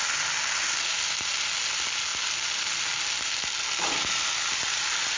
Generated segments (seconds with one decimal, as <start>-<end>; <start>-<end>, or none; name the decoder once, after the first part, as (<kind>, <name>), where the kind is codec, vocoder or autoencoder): none